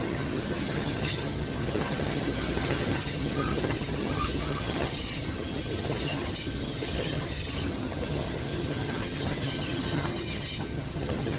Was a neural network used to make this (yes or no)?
yes